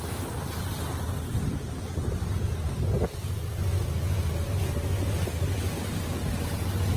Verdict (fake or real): real